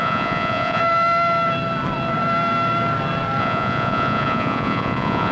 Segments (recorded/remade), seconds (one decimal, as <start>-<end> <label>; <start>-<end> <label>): 0.0-0.8 remade; 0.8-3.4 recorded; 3.4-5.3 remade